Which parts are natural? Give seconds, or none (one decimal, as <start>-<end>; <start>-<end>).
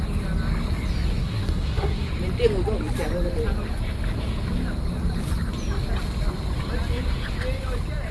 0.0-1.2; 2.1-8.1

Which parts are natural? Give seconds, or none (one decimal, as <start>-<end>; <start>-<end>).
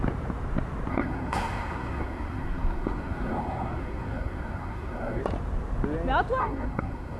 0.0-0.9; 5.2-6.4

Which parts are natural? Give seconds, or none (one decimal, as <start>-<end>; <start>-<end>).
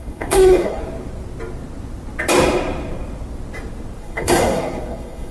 0.8-4.0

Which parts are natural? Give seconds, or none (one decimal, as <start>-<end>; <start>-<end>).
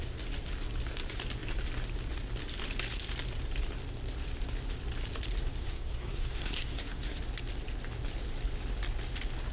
0.0-5.6; 7.2-9.5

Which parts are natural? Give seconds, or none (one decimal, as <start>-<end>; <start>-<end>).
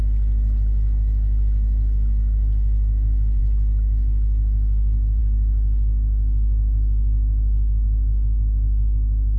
0.0-9.4